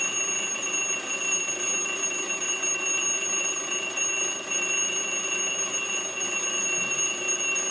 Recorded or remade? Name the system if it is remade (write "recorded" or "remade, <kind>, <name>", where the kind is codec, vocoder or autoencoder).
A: recorded